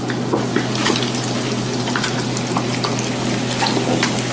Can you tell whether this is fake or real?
real